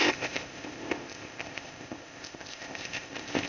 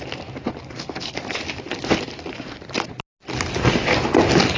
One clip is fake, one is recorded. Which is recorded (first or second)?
second